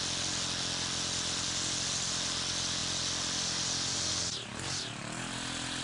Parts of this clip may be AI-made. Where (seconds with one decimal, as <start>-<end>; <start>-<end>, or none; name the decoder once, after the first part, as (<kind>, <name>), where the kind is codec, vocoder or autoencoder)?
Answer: none